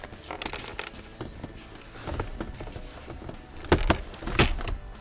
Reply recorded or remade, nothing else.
recorded